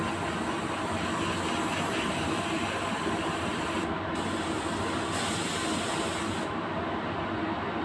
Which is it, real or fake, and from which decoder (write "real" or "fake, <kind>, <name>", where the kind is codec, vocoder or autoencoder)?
real